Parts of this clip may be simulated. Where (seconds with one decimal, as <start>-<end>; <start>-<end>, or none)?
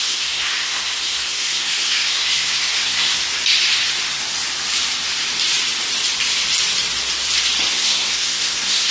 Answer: 0.0-3.2; 7.7-8.9